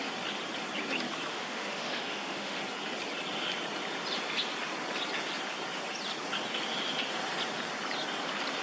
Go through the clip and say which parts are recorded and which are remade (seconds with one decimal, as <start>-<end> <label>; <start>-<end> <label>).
0.0-1.3 recorded; 1.3-2.6 remade; 2.6-8.6 recorded

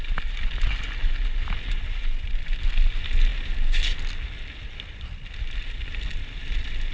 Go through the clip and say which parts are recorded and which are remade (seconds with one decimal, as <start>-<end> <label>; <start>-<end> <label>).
0.0-6.9 recorded

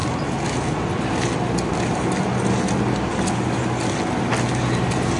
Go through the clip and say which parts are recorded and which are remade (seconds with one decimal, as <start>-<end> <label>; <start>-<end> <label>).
0.0-5.2 recorded